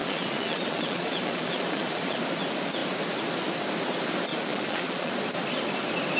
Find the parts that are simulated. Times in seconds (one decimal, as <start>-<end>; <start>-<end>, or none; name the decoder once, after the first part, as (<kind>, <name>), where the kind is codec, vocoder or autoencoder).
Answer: 0.0-2.2 (vocoder, Vocos); 4.3-5.1